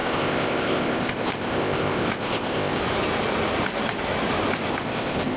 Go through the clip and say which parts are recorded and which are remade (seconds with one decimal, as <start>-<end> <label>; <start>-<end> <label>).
0.0-2.8 remade; 2.8-4.7 recorded; 4.7-5.4 remade